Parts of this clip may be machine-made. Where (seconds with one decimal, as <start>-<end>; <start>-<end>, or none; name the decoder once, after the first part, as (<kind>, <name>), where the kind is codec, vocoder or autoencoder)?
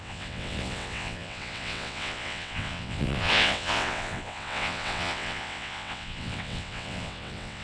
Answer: 0.0-7.6 (vocoder, WaveNeXt)